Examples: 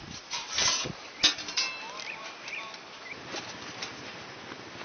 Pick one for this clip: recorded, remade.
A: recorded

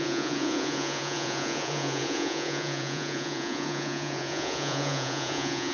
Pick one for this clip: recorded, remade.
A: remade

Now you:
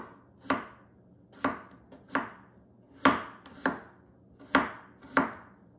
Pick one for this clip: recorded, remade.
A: recorded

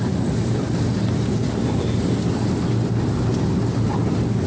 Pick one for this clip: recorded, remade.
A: recorded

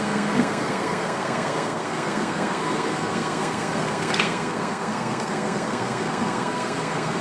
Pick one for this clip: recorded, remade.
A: remade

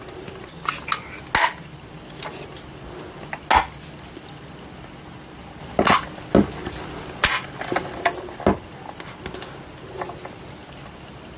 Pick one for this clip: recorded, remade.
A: recorded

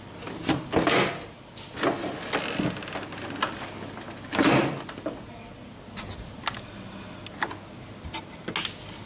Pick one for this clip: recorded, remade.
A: recorded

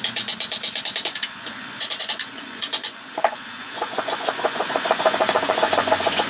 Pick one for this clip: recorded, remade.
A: remade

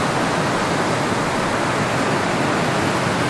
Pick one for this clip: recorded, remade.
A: recorded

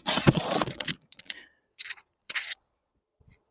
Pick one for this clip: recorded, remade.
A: remade